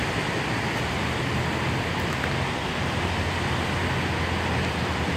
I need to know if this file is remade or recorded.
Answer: recorded